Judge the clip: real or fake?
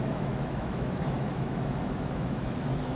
fake